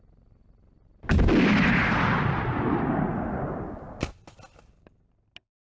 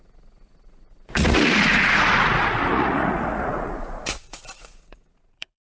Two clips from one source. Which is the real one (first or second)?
first